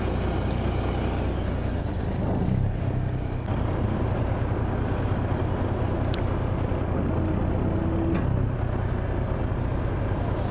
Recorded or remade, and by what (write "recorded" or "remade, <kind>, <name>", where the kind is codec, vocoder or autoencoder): recorded